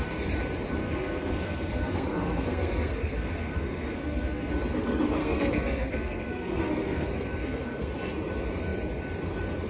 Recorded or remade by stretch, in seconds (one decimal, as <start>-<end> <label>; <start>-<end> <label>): 0.0-0.8 recorded; 0.8-4.5 remade; 4.5-5.2 recorded; 5.2-8.1 remade; 8.1-9.7 recorded